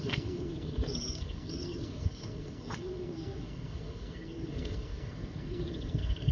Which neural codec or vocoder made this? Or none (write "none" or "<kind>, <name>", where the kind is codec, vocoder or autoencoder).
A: codec, SNAC